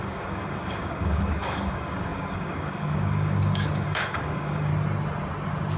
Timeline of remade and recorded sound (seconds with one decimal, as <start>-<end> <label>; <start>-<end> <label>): 0.0-4.7 remade; 4.7-5.8 recorded